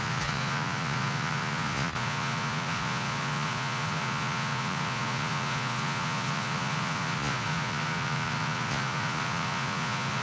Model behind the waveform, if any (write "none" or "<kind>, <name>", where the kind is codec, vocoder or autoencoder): vocoder, Vocos